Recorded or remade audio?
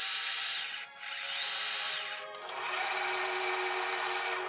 recorded